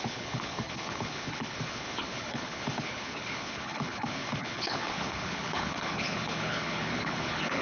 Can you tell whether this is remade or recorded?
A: remade